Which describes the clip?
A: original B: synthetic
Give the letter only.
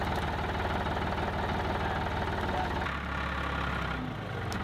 A